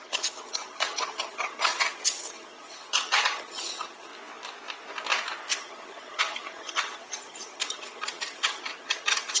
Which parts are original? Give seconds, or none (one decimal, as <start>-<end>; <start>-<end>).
4.1-5.6